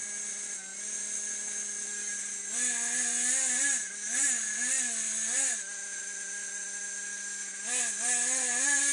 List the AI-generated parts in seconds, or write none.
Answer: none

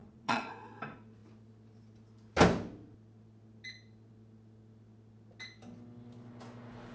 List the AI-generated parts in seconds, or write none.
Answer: 0.0-0.5 (vocoder, Vocos)

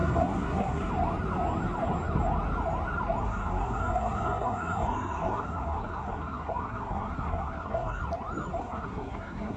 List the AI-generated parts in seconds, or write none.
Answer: 0.0-0.9 (codec, SNAC); 3.2-8.0; 8.6-9.6

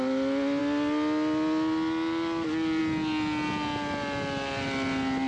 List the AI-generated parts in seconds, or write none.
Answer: none